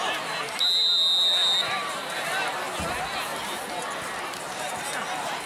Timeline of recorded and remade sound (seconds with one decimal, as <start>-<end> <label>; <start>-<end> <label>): 0.0-5.5 recorded